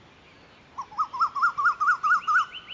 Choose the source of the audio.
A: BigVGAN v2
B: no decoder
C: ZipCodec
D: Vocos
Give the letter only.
B